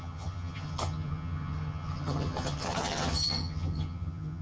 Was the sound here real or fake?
fake